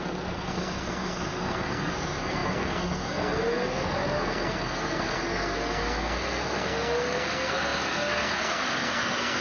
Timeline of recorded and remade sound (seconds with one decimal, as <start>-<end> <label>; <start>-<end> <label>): 0.0-9.4 remade